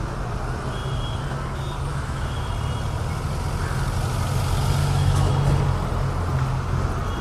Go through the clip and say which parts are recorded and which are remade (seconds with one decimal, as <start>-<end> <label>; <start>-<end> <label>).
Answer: 0.0-1.9 recorded; 1.9-2.5 remade; 2.5-4.8 recorded; 4.8-5.3 remade; 5.3-7.2 recorded